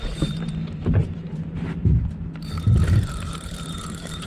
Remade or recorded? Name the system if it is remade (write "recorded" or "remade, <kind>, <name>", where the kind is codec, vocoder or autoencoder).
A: remade, vocoder, BigVGAN v2